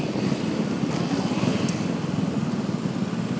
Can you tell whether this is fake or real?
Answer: real